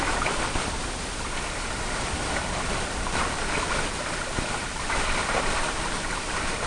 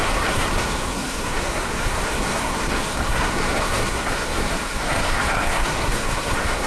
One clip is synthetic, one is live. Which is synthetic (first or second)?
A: second